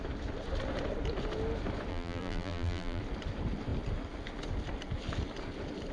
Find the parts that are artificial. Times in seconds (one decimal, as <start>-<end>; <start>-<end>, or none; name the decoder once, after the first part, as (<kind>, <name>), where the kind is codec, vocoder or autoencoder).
1.9-3.0 (vocoder, BigVGAN v2)